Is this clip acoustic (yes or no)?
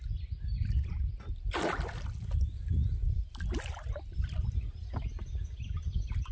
yes